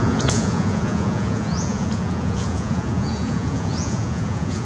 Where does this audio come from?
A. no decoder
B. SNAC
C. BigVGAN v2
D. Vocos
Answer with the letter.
D